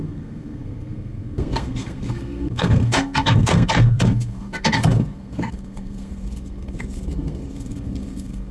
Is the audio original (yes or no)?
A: no